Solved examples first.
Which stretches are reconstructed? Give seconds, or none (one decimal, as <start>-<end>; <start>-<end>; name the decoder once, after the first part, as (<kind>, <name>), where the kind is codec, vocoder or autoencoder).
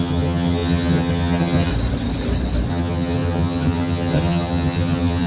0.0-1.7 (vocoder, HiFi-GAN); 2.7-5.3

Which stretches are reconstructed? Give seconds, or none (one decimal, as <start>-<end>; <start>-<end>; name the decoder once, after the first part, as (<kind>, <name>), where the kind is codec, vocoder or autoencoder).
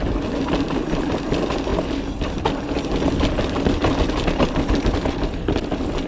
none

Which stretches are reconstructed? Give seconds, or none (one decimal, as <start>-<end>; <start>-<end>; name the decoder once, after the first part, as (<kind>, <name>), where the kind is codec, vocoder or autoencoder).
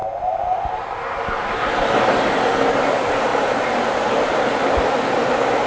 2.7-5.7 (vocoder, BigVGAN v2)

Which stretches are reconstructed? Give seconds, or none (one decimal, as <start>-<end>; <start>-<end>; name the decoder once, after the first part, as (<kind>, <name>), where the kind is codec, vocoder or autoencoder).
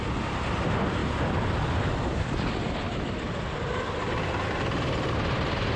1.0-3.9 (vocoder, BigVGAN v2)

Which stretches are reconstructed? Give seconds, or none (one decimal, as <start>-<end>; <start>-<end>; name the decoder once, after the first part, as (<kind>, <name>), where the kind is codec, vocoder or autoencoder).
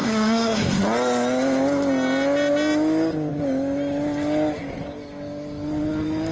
0.0-0.8 (codec, SNAC)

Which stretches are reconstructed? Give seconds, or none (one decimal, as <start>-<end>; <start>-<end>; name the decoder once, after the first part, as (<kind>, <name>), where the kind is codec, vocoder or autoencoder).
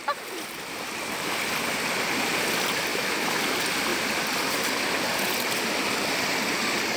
2.9-3.4 (autoencoder, DAC-VAE)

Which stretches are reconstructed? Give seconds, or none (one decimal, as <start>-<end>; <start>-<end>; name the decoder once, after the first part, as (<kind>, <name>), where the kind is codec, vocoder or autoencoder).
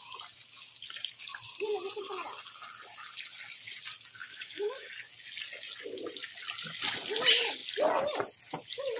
4.2-4.9 (autoencoder, DAC-VAE)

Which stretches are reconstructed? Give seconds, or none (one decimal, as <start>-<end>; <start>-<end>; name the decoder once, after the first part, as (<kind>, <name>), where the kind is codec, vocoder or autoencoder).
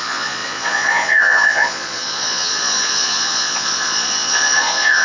0.0-5.0 (vocoder, Vocos)